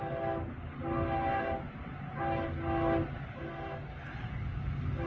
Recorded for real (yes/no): yes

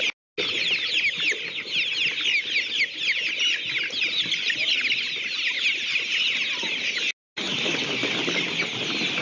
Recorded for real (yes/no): yes